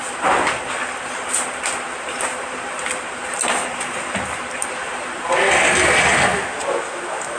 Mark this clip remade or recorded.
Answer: recorded